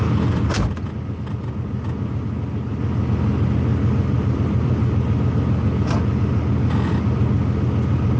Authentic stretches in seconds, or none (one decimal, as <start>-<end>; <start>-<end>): 0.0-3.7; 4.8-8.2